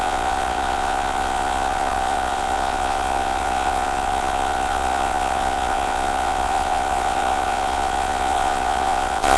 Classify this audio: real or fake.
fake